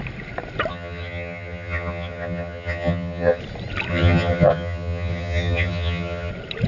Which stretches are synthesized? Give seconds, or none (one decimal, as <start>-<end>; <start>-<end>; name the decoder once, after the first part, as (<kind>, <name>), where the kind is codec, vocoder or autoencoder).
0.7-3.4 (vocoder, HiFi-GAN); 3.9-6.3